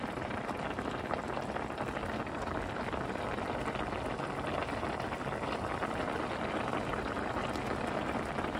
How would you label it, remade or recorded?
recorded